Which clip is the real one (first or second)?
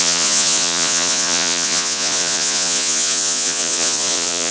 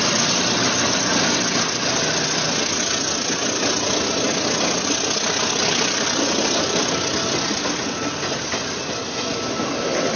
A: second